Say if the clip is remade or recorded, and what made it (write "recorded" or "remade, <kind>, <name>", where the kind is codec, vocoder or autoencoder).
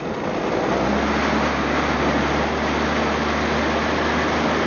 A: recorded